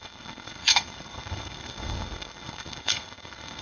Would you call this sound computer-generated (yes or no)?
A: yes